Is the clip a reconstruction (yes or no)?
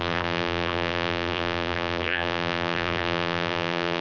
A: yes